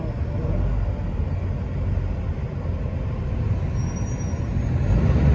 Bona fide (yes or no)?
yes